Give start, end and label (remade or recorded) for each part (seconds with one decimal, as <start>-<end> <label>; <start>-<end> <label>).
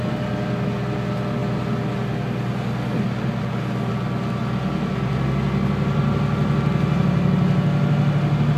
0.0-8.6 recorded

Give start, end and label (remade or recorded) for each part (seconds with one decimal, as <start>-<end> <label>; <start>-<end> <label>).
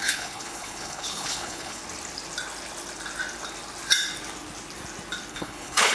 0.0-1.8 remade; 1.8-5.3 recorded; 5.3-5.9 remade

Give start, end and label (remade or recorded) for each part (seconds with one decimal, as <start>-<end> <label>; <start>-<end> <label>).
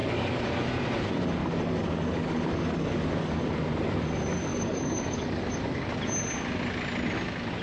0.0-0.6 remade; 0.6-1.4 recorded; 1.4-3.4 remade; 3.4-4.5 recorded; 4.5-5.9 remade; 5.9-7.6 recorded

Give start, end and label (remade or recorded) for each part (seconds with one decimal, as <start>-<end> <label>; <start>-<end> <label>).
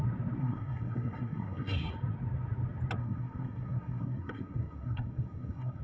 0.0-0.4 recorded; 0.4-1.9 remade; 1.9-3.0 recorded; 3.0-5.8 remade